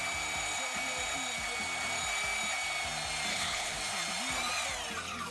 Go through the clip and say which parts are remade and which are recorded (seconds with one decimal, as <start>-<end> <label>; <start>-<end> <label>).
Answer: 0.0-3.3 recorded; 3.3-3.8 remade; 3.8-5.3 recorded